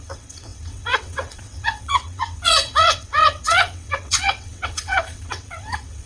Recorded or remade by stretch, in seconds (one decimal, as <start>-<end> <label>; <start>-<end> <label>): 0.0-6.1 remade

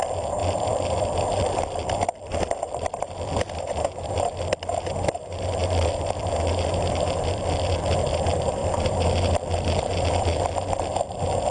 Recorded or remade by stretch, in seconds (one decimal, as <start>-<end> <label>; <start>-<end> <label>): 0.0-0.4 recorded; 0.4-3.6 remade; 3.6-5.6 recorded; 5.6-6.3 remade; 6.3-8.6 recorded; 8.6-9.8 remade; 9.8-11.5 recorded